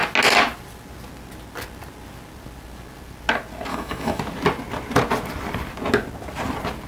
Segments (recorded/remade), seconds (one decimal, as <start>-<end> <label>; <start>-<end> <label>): 0.0-3.7 recorded; 3.7-4.2 remade; 4.2-6.9 recorded